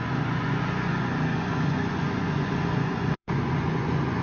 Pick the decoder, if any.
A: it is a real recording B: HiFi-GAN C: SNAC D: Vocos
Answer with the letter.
D